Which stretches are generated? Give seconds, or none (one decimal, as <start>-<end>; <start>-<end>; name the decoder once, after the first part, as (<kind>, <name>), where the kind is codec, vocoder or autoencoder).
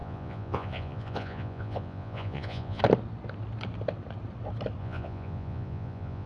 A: 0.0-2.8 (vocoder, Vocos); 4.8-6.3